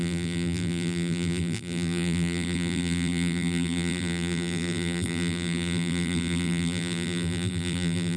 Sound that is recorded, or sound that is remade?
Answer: remade